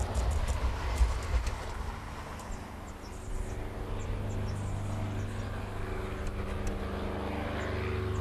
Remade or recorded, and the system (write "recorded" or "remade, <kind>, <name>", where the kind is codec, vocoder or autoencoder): recorded